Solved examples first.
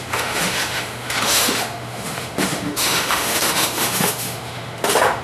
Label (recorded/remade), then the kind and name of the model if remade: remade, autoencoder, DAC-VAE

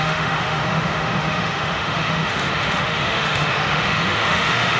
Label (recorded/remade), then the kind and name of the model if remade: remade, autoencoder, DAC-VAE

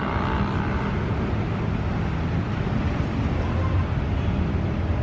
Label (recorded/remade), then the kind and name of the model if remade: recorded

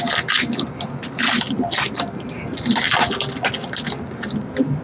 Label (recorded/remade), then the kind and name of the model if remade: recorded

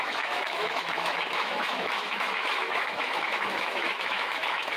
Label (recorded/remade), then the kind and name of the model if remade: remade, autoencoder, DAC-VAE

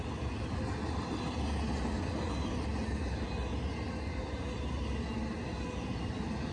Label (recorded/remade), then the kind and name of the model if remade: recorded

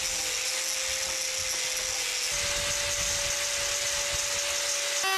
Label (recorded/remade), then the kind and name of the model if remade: recorded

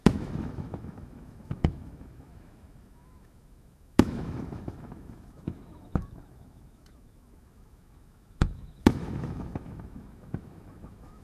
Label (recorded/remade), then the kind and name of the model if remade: remade, autoencoder, DAC-VAE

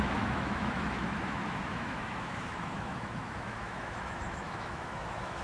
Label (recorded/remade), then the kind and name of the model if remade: remade, autoencoder, DAC-VAE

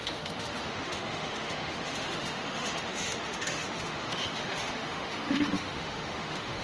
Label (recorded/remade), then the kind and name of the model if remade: remade, autoencoder, DAC-VAE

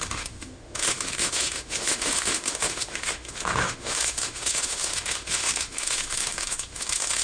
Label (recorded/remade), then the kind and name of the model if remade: remade, autoencoder, DAC-VAE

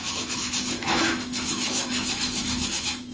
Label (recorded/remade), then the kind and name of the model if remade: remade, autoencoder, DAC-VAE